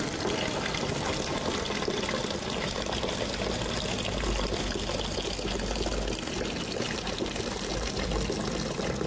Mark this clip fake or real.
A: real